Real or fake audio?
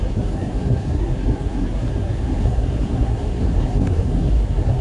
fake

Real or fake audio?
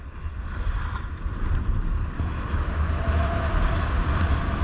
real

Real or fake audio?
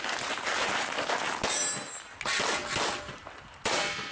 real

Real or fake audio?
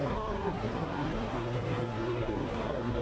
fake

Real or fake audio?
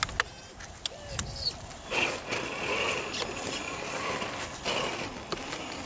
real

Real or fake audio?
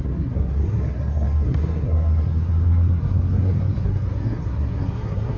fake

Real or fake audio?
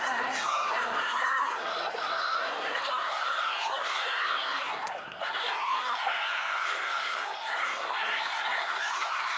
fake